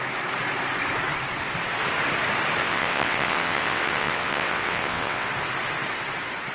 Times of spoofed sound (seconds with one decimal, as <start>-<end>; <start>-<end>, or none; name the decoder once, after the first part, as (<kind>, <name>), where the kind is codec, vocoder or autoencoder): 2.6-5.3 (vocoder, WaveNeXt)